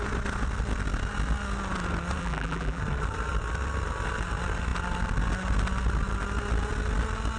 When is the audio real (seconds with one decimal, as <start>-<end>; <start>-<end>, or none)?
0.0-2.2; 2.8-7.4

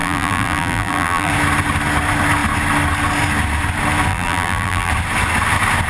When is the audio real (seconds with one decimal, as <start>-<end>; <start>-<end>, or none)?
1.3-4.1; 4.9-5.9

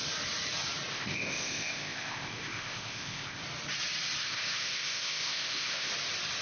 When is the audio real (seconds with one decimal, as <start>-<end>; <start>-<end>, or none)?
0.0-0.9; 3.4-4.2; 5.9-6.4